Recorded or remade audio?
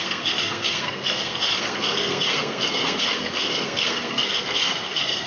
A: remade